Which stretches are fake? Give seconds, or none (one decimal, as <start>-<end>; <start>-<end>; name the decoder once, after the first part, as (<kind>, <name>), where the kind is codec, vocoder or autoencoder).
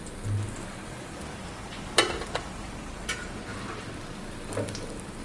1.4-3.9 (vocoder, BigVGAN v2)